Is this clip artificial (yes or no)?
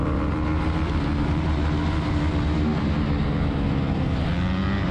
no